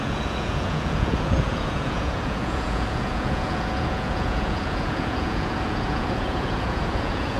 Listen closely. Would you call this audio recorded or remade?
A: remade